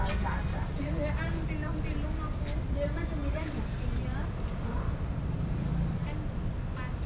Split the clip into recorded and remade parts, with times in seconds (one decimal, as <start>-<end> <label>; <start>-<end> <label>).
0.0-7.1 recorded